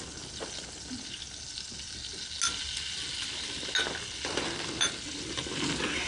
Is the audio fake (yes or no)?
no